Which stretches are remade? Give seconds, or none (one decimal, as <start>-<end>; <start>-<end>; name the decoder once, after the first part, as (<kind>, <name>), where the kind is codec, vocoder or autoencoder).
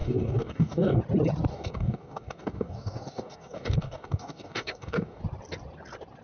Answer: 0.0-1.0 (codec, DAC); 1.5-5.2